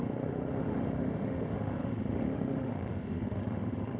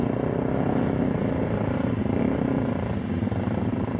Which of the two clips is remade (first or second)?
first